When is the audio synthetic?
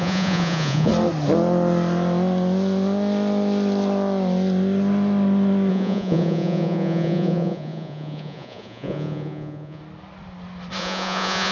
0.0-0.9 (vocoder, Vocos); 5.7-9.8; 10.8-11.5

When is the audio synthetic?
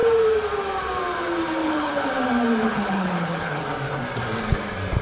1.6-2.1 (codec, HILCodec); 2.6-3.6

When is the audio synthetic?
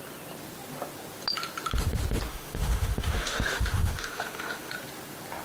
2.3-4.7 (autoencoder, DAC-VAE)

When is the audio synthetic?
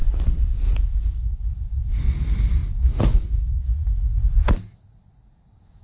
0.0-0.8 (vocoder, BigVGAN v2)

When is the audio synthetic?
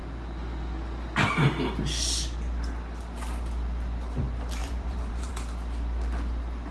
4.6-5.3 (vocoder, BigVGAN v2)